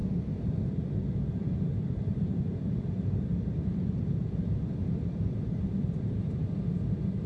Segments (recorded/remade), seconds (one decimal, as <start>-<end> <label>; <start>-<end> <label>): 0.0-1.7 recorded; 1.7-6.0 remade; 6.0-7.3 recorded